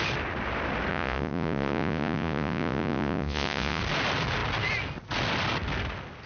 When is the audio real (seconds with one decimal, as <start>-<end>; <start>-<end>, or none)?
0.0-0.9; 3.8-6.3